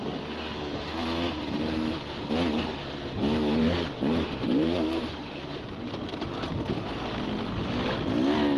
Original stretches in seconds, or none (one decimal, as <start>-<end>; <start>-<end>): 0.0-3.6; 6.1-8.6